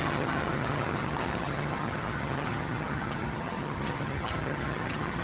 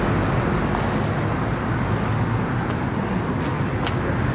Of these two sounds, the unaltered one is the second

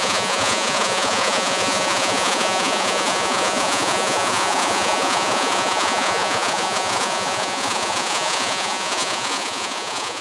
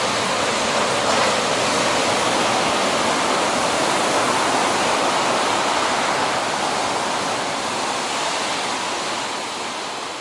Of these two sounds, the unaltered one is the second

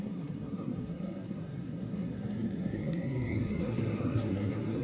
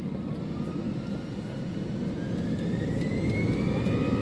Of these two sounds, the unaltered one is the second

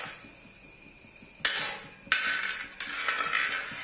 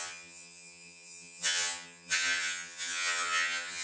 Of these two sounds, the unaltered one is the first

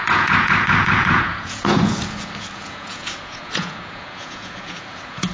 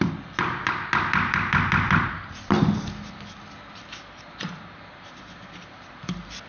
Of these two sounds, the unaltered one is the second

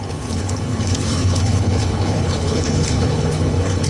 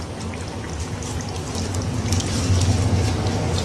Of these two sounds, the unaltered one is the second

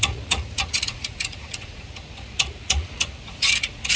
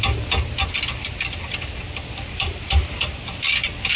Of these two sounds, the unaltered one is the second